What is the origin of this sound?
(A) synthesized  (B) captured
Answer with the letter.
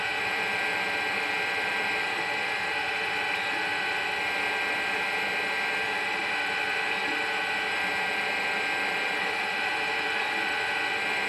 B